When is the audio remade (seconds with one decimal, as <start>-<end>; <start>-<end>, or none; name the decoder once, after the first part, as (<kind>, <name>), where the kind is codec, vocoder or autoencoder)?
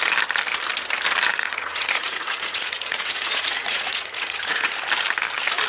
1.3-4.7 (vocoder, Vocos)